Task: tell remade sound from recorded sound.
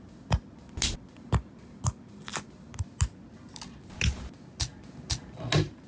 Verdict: recorded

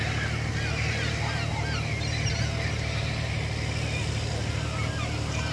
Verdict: recorded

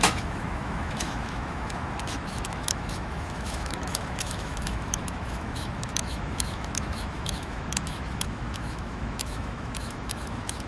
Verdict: remade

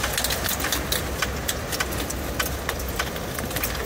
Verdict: recorded